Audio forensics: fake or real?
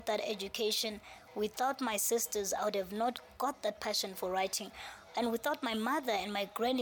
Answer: real